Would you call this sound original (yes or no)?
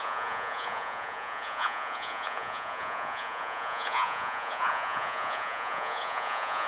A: no